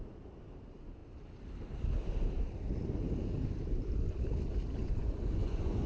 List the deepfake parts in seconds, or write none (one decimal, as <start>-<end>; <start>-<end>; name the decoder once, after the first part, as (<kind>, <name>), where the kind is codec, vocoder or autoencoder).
4.8-5.9 (vocoder, Vocos)